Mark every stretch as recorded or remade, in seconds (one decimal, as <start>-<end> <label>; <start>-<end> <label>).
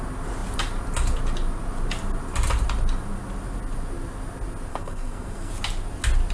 0.0-4.7 recorded; 4.7-5.5 remade; 5.5-6.3 recorded